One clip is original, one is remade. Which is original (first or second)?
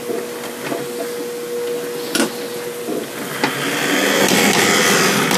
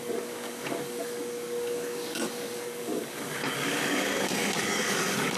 first